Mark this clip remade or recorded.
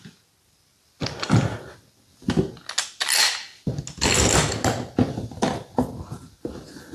recorded